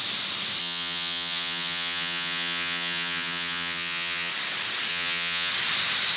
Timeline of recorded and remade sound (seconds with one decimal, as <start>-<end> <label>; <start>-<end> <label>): 0.0-0.6 recorded; 0.6-4.3 remade; 4.3-4.9 recorded; 4.9-5.5 remade; 5.5-6.2 recorded